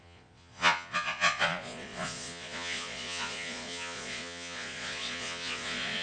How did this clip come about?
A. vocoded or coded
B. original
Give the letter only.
A